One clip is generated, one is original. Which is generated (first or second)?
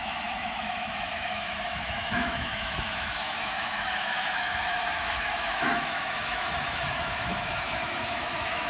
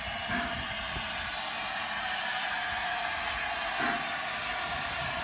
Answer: first